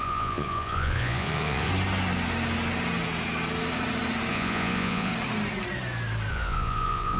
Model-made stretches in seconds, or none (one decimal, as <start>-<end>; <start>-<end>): 0.0-1.7; 4.3-5.1; 6.3-7.2

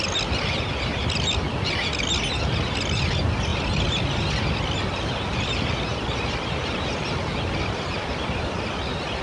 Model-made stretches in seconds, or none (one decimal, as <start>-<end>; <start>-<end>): none

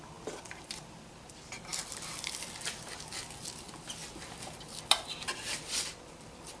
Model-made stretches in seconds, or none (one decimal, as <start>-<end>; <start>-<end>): none

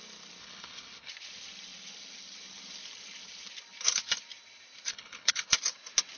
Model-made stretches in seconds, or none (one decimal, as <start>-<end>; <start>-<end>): 0.4-1.1; 4.9-5.5

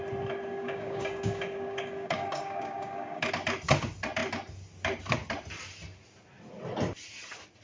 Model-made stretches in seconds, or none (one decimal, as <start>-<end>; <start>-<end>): 0.5-3.3